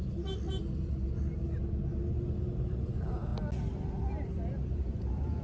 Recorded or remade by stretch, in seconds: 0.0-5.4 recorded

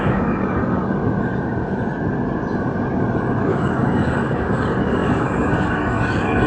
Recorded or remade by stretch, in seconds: 0.0-0.8 remade; 0.8-3.4 recorded; 3.4-6.5 remade